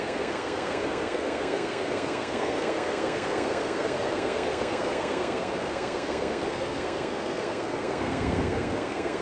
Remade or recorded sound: remade